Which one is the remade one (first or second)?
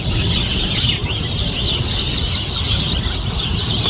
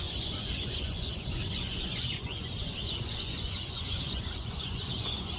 second